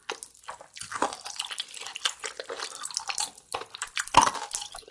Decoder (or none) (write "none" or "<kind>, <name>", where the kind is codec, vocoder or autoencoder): none